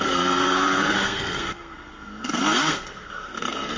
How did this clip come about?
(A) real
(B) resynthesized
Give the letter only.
B